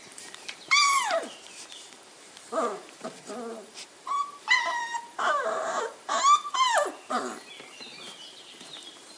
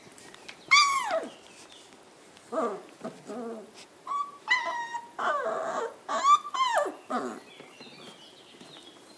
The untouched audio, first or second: second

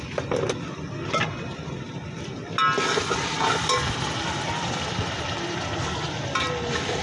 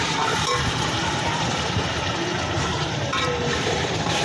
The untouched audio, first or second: first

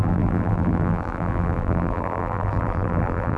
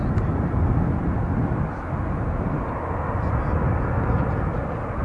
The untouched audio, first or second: second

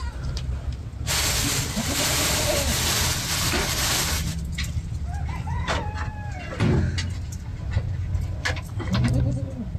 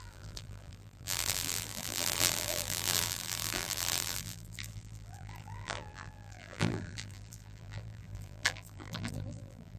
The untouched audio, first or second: first